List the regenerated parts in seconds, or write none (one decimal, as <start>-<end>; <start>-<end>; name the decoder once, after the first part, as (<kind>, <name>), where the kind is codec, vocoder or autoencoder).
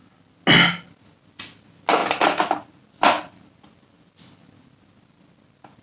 none